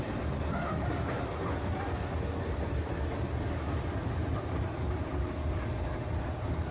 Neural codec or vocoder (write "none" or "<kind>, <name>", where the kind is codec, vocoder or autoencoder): none